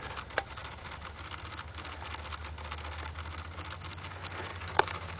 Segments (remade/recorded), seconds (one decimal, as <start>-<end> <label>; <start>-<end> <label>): 0.0-4.5 recorded; 4.5-5.2 remade